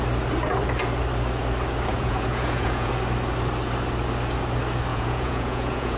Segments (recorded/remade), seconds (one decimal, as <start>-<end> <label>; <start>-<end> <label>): 0.0-1.9 recorded; 1.9-2.9 remade; 2.9-4.9 recorded; 4.9-6.0 remade